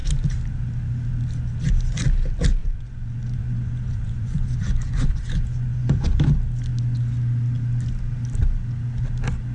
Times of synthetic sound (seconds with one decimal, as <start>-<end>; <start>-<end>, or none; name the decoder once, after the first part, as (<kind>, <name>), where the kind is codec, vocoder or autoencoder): 2.6-6.2 (vocoder, Vocos)